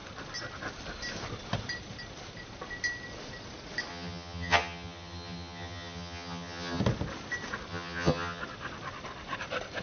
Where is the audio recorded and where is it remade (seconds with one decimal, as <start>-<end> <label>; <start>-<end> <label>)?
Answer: 0.0-3.9 recorded; 3.9-6.8 remade; 6.8-7.7 recorded; 7.7-8.4 remade; 8.4-9.8 recorded